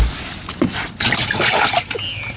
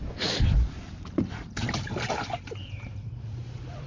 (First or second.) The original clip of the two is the first